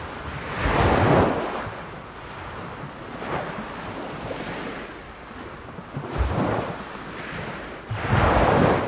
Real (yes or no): yes